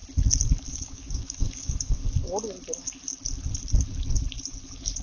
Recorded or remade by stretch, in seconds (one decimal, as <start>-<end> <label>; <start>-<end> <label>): 0.0-0.7 recorded; 0.7-2.0 remade; 2.0-5.0 recorded